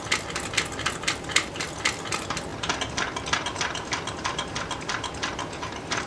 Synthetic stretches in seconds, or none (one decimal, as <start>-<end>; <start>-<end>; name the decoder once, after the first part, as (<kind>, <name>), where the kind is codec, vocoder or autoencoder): none